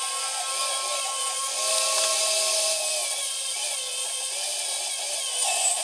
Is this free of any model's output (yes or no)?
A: yes